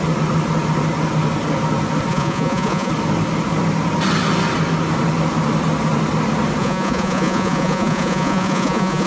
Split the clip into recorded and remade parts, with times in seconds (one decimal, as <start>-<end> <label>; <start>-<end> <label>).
0.0-2.1 recorded; 2.1-2.9 remade; 2.9-6.6 recorded; 6.6-9.1 remade